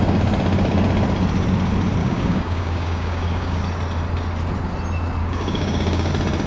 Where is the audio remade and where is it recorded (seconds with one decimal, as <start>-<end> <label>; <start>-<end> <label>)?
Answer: 0.0-2.0 recorded; 2.0-3.6 remade; 3.6-5.2 recorded; 5.2-6.1 remade; 6.1-6.5 recorded